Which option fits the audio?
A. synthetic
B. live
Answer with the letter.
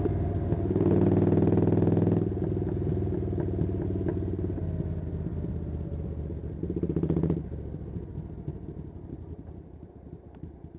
B